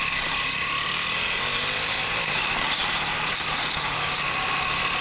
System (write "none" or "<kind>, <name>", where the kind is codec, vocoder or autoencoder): none